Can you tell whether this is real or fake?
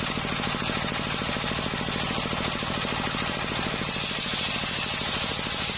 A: real